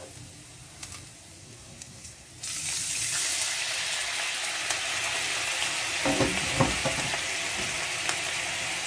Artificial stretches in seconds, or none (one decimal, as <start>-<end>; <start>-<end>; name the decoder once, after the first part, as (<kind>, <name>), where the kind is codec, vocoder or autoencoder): 1.4-2.3 (codec, SNAC)